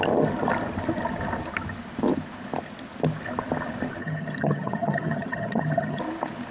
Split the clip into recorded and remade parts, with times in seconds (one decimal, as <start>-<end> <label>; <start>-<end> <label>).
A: 0.0-4.0 recorded; 4.0-6.0 remade; 6.0-6.5 recorded